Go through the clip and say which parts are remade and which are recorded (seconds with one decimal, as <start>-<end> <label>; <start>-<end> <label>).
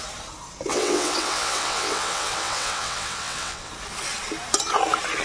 0.0-0.7 recorded; 0.7-3.7 remade; 3.7-5.2 recorded